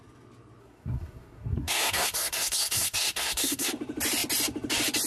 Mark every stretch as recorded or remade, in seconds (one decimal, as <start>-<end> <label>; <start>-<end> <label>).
0.0-0.6 recorded; 0.6-3.7 remade; 3.7-5.1 recorded